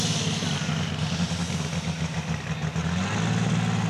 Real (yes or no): yes